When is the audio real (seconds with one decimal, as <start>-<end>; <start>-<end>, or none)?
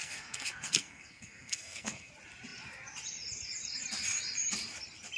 2.1-5.2